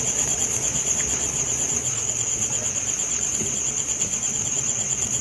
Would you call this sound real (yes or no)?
no